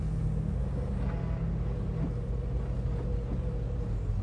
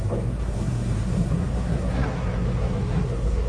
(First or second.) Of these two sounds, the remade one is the second